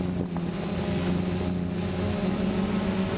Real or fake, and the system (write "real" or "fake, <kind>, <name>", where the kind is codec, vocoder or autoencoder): real